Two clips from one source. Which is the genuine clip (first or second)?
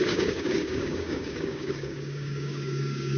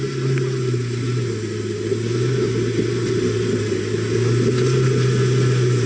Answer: second